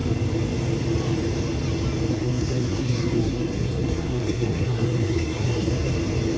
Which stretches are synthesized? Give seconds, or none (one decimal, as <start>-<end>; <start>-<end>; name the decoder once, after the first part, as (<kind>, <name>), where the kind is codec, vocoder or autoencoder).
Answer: 2.1-5.9 (codec, SNAC)